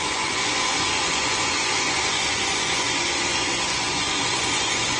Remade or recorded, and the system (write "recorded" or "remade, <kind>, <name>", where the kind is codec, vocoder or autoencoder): remade, vocoder, Vocos